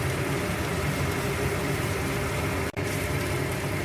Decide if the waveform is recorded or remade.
remade